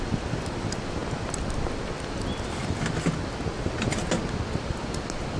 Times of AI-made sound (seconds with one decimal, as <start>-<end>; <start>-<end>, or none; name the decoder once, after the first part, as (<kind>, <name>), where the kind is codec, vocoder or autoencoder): none